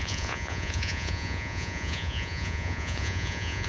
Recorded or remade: remade